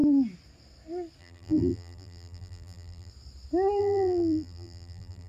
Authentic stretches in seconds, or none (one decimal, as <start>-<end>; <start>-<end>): 0.0-1.2; 3.1-3.8